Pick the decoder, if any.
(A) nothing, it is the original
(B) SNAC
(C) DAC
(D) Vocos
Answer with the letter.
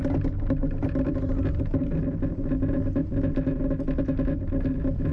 A